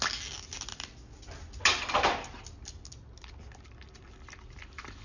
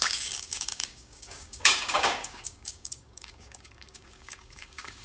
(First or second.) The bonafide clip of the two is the first